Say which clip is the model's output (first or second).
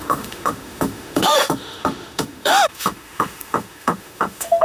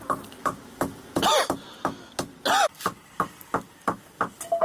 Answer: first